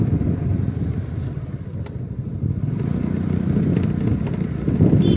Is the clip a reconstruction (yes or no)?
yes